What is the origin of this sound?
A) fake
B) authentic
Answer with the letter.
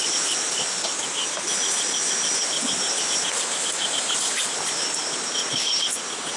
B